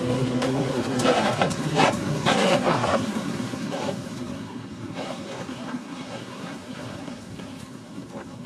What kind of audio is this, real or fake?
fake